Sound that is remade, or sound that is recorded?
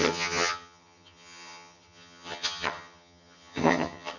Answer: remade